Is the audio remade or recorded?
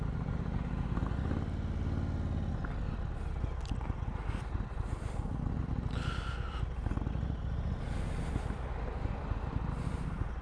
recorded